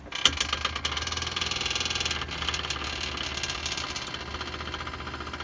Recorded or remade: recorded